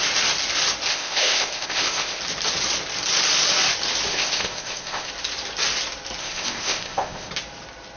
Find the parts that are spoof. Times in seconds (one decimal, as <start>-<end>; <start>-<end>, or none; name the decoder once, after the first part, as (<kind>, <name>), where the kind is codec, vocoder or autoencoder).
0.9-2.2 (codec, ZipCodec); 4.1-5.1; 6.2-7.3